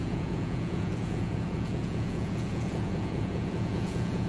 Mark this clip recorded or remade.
remade